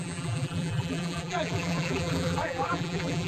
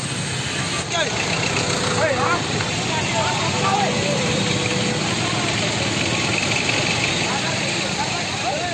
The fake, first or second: first